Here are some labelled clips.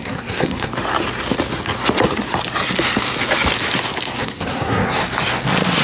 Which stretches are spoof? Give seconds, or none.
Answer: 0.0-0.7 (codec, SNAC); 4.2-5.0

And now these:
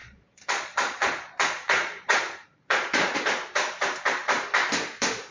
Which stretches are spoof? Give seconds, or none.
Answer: 0.0-3.2 (vocoder, Vocos)

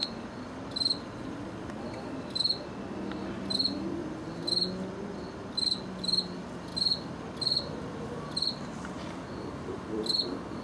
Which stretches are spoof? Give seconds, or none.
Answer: none

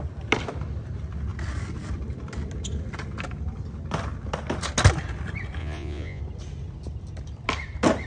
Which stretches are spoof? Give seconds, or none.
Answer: 5.6-6.2 (vocoder, Vocos)

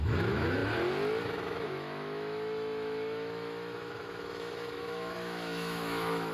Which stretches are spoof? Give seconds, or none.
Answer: 0.0-0.6 (autoencoder, DAC-VAE); 1.2-6.3

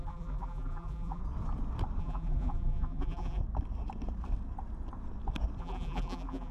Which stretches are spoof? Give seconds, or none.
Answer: 0.0-1.2 (vocoder, BigVGAN v2); 2.0-3.4; 5.6-6.5

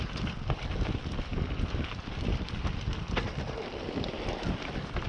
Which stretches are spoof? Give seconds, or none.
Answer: none